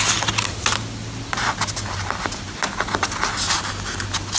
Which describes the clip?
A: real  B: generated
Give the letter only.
A